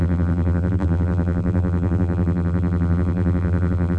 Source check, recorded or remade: remade